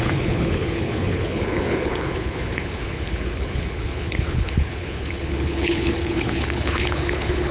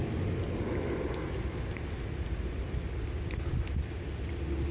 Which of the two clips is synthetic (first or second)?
first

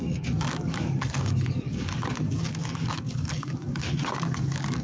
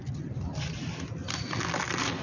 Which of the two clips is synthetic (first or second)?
first